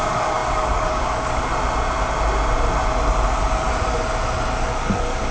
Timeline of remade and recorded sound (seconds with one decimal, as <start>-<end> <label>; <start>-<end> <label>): 0.0-1.5 remade; 1.5-4.7 recorded; 4.7-5.3 remade